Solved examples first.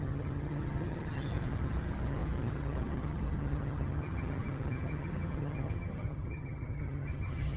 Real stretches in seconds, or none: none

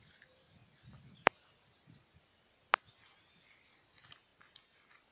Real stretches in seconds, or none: 0.0-0.6; 2.9-5.1